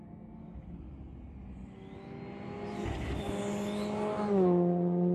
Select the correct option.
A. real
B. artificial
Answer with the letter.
A